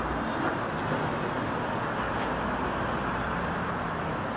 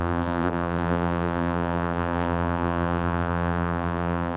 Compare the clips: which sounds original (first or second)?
first